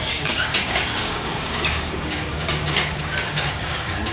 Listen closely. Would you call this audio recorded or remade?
remade